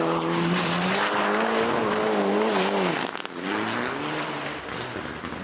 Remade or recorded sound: recorded